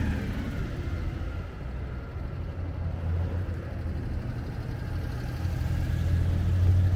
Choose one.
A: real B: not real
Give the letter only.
A